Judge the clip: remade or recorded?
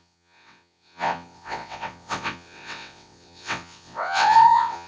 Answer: remade